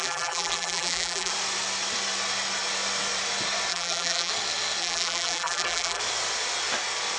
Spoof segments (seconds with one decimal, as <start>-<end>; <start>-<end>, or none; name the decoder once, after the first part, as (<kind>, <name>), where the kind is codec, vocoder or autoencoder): 0.0-1.3 (vocoder, BigVGAN v2); 3.7-4.3; 4.8-6.0